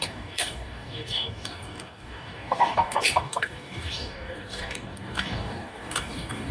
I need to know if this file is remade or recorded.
remade